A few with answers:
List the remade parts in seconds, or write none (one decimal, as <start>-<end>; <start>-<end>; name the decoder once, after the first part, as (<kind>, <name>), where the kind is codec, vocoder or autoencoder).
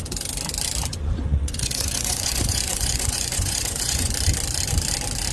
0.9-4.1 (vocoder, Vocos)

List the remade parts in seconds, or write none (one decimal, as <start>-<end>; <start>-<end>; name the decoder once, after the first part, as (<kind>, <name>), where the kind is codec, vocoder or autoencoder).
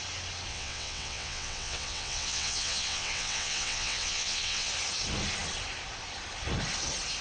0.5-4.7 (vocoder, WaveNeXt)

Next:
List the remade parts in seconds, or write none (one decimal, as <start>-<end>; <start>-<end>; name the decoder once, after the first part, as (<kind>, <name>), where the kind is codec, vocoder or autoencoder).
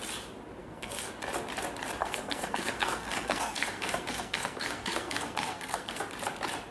0.6-1.1 (codec, SNAC); 2.0-6.0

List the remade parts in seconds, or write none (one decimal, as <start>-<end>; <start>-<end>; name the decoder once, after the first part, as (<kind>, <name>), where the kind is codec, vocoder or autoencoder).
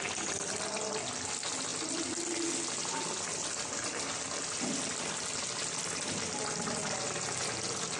none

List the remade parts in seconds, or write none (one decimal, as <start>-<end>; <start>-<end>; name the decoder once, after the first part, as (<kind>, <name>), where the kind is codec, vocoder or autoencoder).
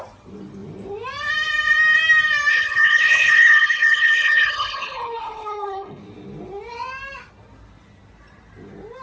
2.5-6.0 (codec, HILCodec)